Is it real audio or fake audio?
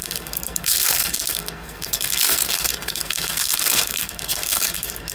fake